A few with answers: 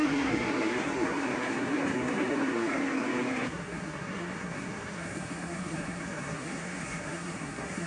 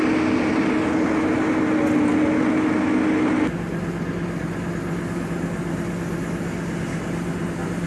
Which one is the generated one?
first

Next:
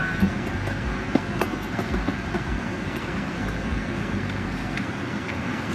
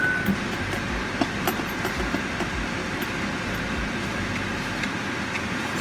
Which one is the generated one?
first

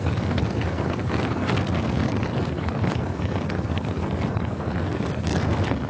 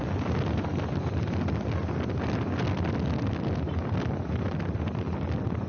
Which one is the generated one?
first